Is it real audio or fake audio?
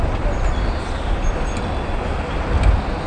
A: real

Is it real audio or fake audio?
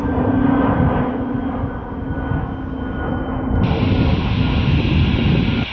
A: real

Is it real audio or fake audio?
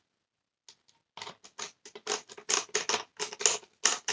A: real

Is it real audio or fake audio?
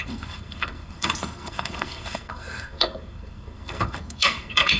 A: fake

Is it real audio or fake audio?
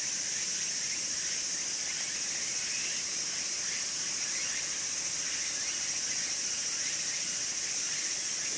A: real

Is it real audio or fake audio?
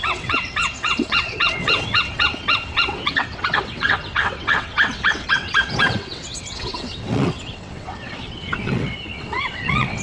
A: fake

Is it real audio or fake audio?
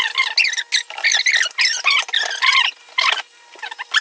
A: real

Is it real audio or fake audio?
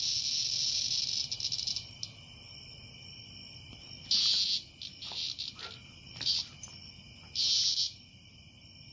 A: real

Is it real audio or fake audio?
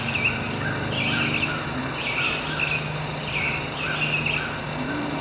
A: real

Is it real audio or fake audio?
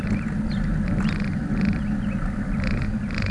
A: real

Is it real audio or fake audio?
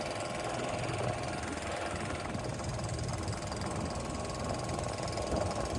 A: real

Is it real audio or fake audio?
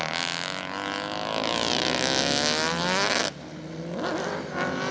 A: real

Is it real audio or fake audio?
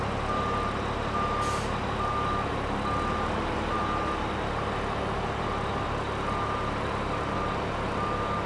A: real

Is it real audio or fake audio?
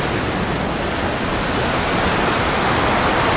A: real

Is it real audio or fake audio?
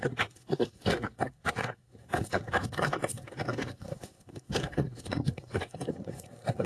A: fake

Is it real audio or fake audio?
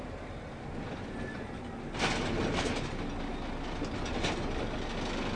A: real